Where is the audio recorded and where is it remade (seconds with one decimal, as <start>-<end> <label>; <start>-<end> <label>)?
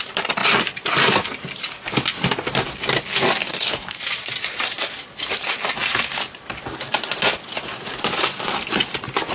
0.0-3.4 recorded; 3.4-4.0 remade; 4.0-9.3 recorded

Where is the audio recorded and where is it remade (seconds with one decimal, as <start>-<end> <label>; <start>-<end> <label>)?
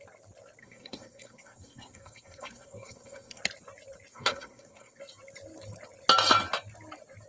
0.0-0.6 recorded; 0.6-3.4 remade; 3.4-4.1 recorded; 4.1-5.0 remade; 5.0-7.3 recorded